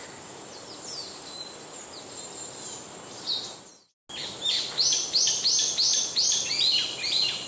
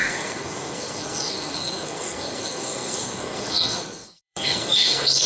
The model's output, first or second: second